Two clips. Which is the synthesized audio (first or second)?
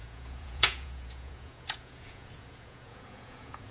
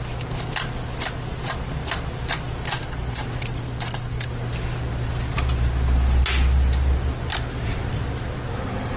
first